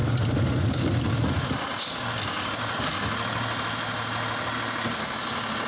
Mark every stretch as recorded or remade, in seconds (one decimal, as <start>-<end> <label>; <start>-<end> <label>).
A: 0.0-5.7 recorded